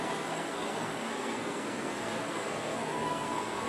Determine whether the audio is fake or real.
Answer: fake